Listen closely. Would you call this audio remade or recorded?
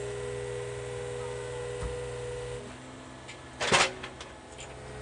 recorded